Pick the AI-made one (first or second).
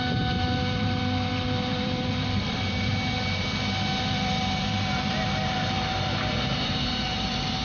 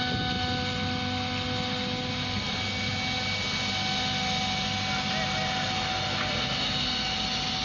first